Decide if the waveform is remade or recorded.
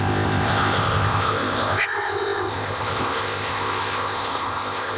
remade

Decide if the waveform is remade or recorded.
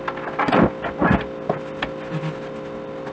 recorded